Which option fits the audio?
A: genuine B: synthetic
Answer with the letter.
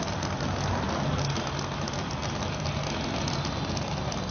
A